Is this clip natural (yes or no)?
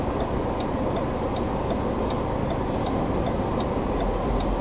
yes